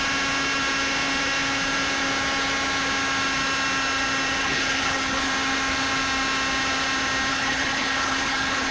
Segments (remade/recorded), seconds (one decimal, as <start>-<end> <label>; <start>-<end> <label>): 0.0-4.4 recorded; 4.4-5.3 remade; 5.3-7.3 recorded; 7.3-8.7 remade